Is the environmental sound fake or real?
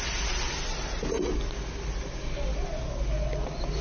real